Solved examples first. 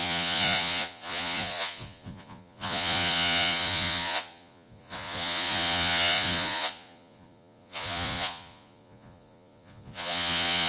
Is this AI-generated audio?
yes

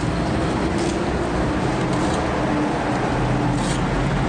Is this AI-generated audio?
no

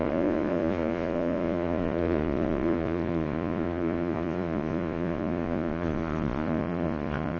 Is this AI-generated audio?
yes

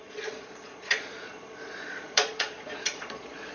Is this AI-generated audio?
yes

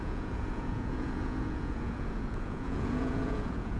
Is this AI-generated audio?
yes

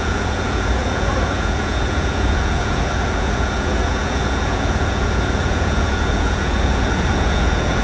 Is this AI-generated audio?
yes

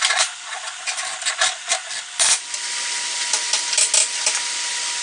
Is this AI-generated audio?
no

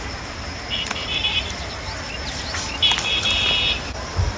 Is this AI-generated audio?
no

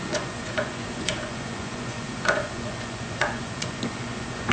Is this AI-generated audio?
yes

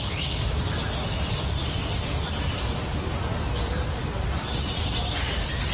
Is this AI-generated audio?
no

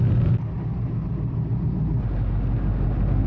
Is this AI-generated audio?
no